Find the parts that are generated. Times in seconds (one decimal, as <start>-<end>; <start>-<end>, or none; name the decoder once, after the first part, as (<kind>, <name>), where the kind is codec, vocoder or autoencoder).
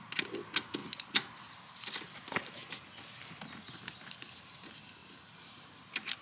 5.0-5.7 (vocoder, BigVGAN v2)